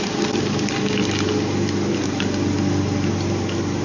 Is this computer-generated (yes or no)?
no